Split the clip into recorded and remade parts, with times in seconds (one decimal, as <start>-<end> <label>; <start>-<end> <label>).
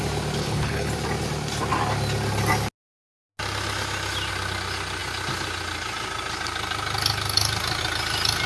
0.0-0.4 recorded; 0.4-0.9 remade; 0.9-8.5 recorded